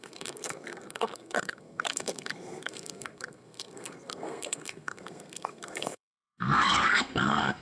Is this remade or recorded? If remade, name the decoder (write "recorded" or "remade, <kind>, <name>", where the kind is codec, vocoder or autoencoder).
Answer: remade, codec, SNAC